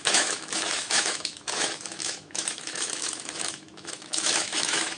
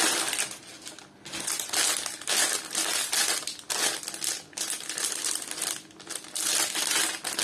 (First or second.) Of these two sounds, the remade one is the first